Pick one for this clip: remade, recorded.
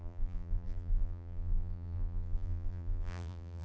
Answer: remade